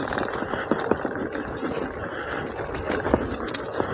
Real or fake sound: real